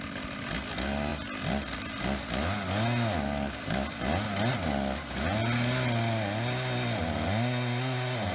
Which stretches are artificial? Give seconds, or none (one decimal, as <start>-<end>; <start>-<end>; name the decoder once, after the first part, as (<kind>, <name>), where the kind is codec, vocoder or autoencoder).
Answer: none